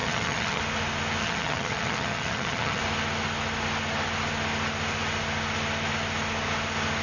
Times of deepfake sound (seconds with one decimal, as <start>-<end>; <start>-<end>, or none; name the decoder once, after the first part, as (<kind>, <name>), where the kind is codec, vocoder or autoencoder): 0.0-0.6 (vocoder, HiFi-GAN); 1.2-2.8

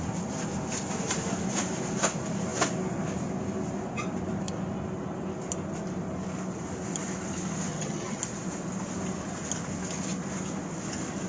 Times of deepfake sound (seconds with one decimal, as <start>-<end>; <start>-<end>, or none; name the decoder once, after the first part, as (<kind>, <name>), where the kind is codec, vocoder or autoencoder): 7.7-8.2 (vocoder, HiFi-GAN)

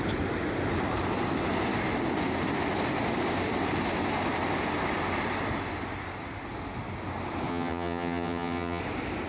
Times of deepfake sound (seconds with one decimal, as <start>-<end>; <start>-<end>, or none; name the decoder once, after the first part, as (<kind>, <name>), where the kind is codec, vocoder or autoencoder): 7.5-8.8 (vocoder, HiFi-GAN)